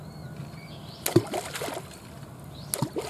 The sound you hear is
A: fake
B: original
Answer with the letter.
B